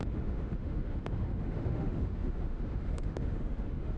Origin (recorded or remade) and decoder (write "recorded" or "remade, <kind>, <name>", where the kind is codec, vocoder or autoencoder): remade, autoencoder, DAC-VAE